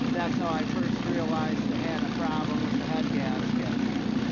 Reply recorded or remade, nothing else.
recorded